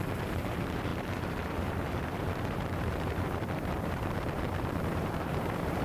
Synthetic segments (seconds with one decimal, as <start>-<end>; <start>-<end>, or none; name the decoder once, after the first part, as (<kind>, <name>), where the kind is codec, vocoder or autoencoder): 0.0-5.8 (vocoder, BigVGAN v2)